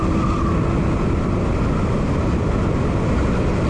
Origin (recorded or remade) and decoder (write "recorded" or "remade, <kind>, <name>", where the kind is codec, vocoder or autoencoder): recorded